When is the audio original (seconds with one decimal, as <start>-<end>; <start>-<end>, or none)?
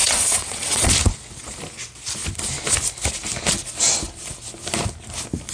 0.9-5.5